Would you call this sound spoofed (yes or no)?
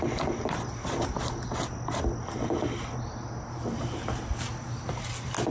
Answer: no